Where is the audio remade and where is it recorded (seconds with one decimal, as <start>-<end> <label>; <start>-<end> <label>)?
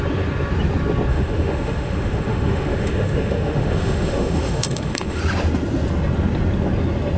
0.0-1.1 recorded; 1.1-5.2 remade; 5.2-7.2 recorded